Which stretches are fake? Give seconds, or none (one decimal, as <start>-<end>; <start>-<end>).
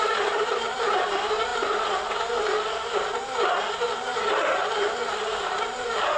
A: 0.0-1.5; 5.2-6.2